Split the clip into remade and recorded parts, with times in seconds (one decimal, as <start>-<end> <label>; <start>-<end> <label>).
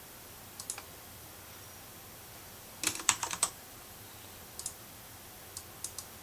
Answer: 0.0-2.9 recorded; 2.9-4.4 remade; 4.4-6.2 recorded